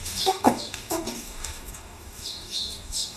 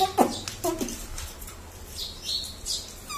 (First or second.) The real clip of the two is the second